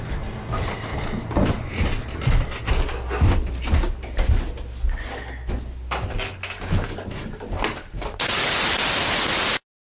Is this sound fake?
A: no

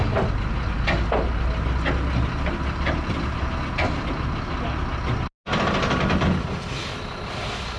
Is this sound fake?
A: no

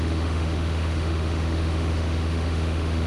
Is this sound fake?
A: yes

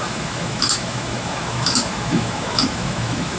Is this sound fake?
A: yes